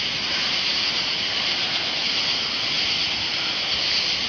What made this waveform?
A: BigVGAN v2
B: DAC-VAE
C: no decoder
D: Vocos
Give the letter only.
C